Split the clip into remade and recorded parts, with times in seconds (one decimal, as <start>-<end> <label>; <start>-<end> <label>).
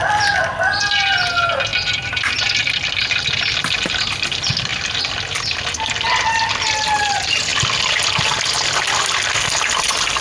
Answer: 0.0-7.5 remade; 7.5-9.6 recorded; 9.6-10.2 remade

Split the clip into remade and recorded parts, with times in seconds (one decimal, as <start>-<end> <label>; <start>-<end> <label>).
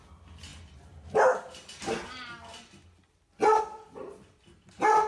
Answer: 0.0-5.1 recorded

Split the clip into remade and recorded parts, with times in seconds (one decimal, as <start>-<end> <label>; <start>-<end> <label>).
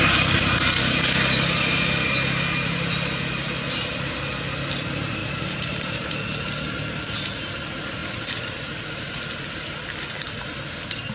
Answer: 0.0-5.2 recorded; 5.2-6.1 remade; 6.1-8.0 recorded; 8.0-9.2 remade; 9.2-11.1 recorded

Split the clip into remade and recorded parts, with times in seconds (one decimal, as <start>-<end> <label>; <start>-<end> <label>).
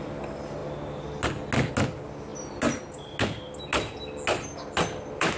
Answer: 0.0-5.4 recorded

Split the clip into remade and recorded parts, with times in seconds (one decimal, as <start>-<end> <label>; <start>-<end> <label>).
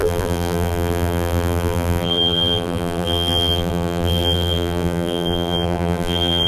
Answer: 0.0-6.5 remade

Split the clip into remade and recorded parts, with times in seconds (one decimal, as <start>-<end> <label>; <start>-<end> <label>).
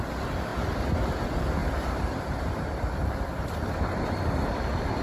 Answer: 0.0-1.6 recorded; 1.6-4.6 remade; 4.6-5.0 recorded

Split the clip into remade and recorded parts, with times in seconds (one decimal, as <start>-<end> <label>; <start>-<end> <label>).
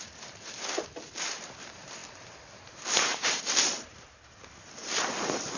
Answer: 0.0-4.8 remade; 4.8-5.6 recorded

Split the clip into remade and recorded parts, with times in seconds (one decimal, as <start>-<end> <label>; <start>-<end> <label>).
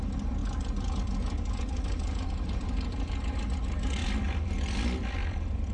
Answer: 0.0-0.4 recorded; 0.4-3.2 remade; 3.2-4.0 recorded; 4.0-5.7 remade